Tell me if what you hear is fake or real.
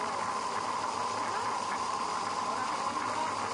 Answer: real